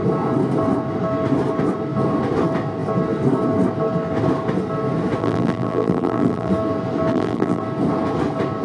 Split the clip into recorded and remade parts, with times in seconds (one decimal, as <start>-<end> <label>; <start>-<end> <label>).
0.0-5.2 recorded; 5.2-6.5 remade; 6.5-7.1 recorded; 7.1-7.6 remade; 7.6-8.6 recorded